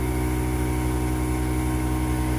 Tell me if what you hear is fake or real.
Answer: real